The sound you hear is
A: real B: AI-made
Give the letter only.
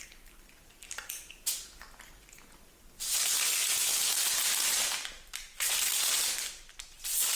A